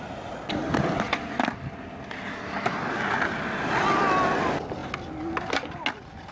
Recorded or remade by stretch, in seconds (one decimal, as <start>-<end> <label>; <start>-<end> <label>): 0.0-6.3 recorded